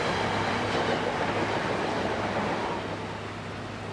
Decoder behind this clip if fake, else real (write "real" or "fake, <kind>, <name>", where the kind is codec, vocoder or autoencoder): real